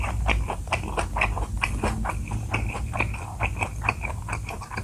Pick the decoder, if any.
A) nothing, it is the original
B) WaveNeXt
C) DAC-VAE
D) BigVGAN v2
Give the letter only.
A